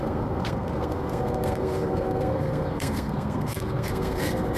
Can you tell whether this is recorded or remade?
remade